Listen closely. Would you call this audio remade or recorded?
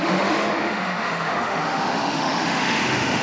remade